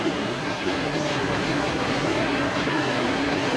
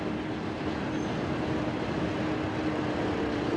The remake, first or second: first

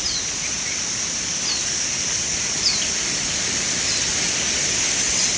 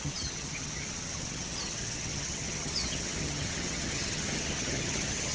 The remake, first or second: second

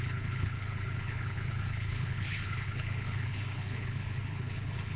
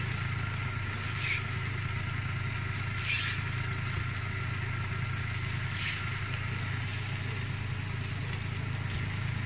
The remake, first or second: first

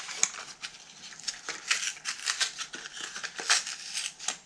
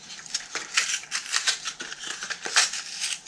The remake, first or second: second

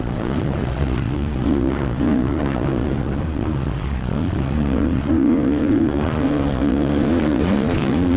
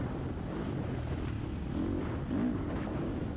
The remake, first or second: first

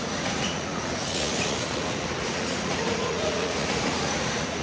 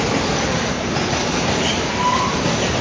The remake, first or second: first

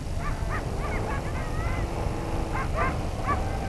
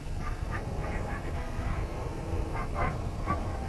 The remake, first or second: second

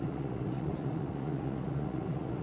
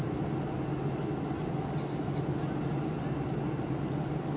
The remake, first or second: first